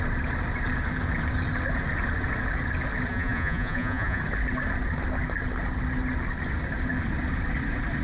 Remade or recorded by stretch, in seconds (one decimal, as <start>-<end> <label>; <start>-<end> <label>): 0.0-3.1 recorded; 3.1-4.2 remade; 4.2-8.0 recorded